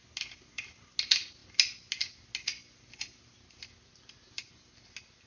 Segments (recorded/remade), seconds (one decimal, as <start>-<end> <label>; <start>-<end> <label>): 0.0-5.3 recorded